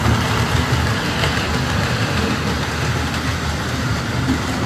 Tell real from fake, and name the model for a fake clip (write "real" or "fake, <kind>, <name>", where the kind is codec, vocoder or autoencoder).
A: real